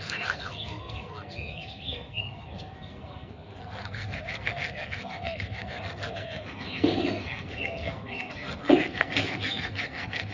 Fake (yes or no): yes